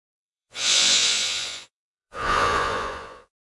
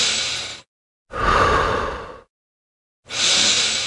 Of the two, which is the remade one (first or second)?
first